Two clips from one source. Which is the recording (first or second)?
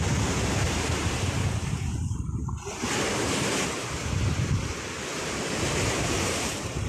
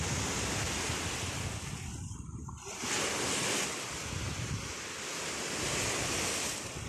second